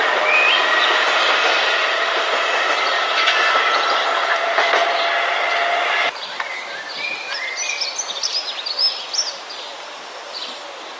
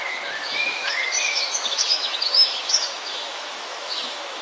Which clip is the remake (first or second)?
second